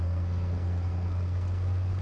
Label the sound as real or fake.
fake